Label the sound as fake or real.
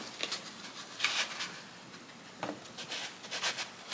real